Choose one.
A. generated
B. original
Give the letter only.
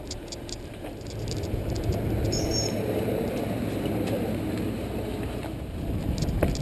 A